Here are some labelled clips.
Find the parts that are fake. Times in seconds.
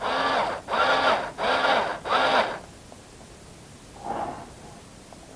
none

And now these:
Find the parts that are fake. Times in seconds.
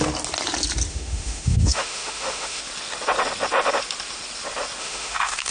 0.9-2.6 (autoencoder, DAC-VAE); 4.8-5.5